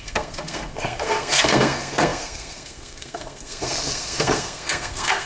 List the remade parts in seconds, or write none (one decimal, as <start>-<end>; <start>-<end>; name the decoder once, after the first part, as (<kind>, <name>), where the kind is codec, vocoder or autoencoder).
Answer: 0.0-5.3 (codec, SNAC)